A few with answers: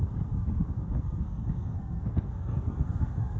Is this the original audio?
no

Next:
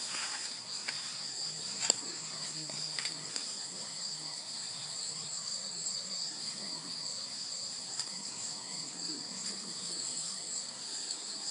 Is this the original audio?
no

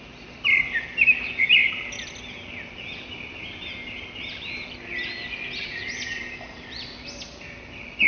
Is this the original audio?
yes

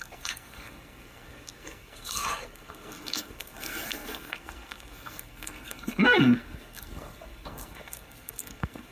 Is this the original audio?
no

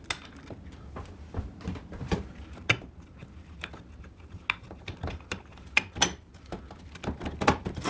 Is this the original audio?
yes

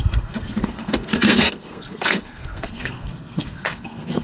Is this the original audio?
no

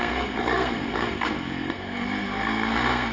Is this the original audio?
no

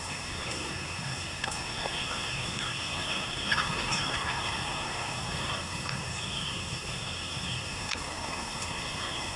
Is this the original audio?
no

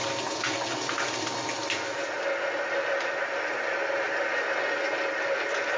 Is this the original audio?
yes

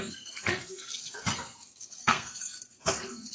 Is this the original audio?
no